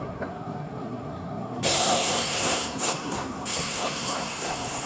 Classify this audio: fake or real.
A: fake